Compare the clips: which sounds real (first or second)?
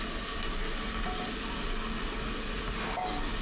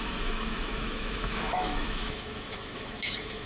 first